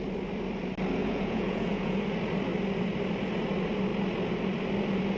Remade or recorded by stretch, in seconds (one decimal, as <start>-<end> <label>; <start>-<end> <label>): 0.0-1.0 recorded; 1.0-2.0 remade; 2.0-5.2 recorded